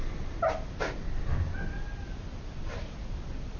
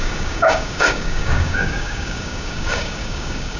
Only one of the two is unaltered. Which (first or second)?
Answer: first